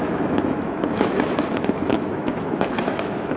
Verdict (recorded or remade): remade